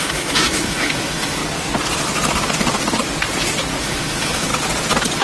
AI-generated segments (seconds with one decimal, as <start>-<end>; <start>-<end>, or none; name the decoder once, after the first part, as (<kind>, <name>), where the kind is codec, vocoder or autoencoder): 0.0-1.4 (autoencoder, DAC-VAE); 3.8-4.5